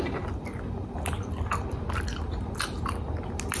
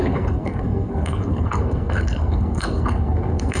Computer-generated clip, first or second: second